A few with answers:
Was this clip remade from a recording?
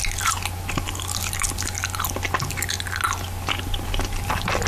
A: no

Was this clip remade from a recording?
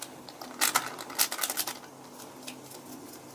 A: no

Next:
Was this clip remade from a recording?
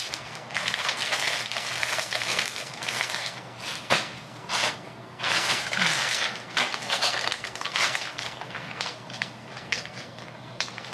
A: yes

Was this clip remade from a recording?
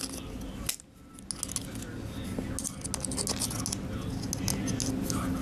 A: no